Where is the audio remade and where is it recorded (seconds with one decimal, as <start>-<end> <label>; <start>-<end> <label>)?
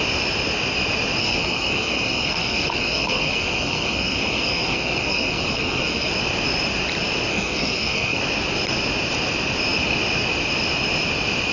0.0-1.2 recorded; 1.2-6.1 remade; 6.1-7.3 recorded; 7.3-8.2 remade; 8.2-11.5 recorded